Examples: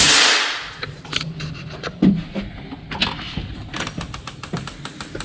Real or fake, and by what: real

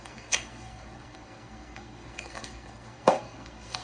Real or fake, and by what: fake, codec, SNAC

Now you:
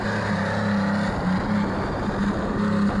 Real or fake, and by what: real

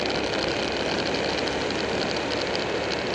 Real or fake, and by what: real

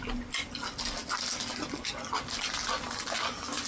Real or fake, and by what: real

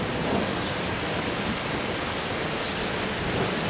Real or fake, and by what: real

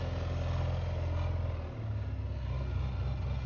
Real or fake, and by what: real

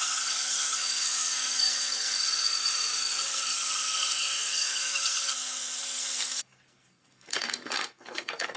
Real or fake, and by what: fake, codec, SNAC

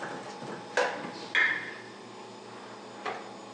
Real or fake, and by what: real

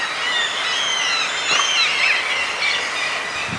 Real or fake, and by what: real